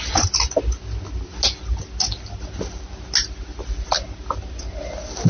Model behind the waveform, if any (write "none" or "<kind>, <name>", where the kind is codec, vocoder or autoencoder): none